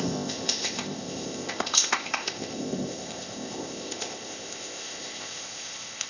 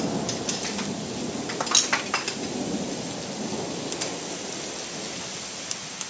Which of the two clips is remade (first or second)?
first